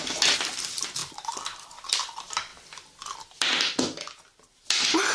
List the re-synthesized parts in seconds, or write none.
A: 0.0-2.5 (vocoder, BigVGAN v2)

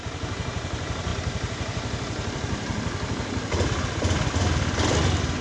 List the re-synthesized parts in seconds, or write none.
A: 1.1-4.3 (vocoder, BigVGAN v2)

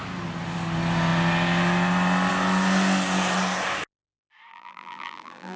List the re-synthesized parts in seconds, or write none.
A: 4.5-5.6 (vocoder, BigVGAN v2)

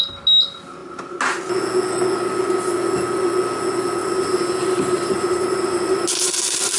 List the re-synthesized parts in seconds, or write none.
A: 4.0-6.8 (vocoder, BigVGAN v2)

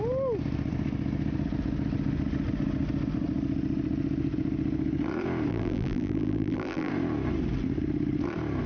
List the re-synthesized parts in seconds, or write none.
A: 5.5-6.9 (vocoder, BigVGAN v2)

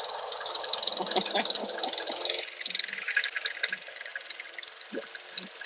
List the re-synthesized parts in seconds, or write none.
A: none

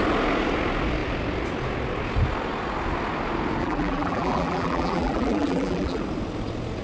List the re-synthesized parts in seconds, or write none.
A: 3.6-6.0 (vocoder, BigVGAN v2)

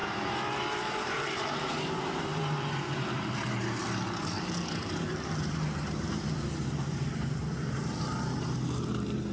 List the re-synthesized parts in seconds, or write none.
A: 0.0-9.3 (vocoder, BigVGAN v2)